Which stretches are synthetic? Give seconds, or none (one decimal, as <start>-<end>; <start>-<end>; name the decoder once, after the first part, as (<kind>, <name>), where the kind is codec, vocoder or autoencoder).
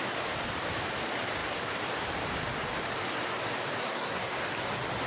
3.8-4.3 (codec, SNAC)